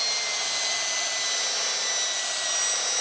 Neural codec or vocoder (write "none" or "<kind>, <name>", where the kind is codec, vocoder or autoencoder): none